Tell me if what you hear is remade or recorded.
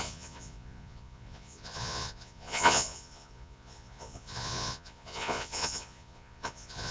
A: remade